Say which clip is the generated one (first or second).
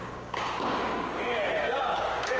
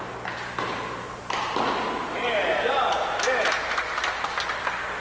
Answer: first